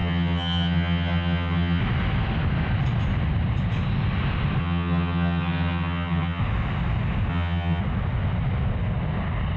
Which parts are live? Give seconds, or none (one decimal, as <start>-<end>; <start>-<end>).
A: 1.8-4.6; 6.4-7.3; 7.8-9.6